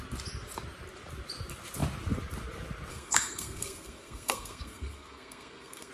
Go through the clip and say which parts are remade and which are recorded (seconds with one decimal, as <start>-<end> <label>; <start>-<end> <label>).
0.0-2.9 recorded; 2.9-5.9 remade